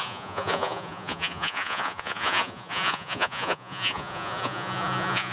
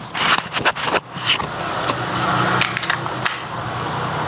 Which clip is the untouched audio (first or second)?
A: second